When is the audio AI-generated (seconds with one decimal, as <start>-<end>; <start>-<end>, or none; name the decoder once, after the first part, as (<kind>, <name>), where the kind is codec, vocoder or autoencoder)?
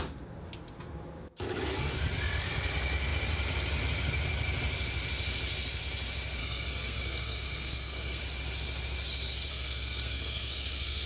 6.4-8.2 (codec, SNAC); 9.5-11.1